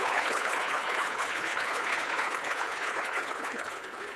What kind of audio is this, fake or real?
fake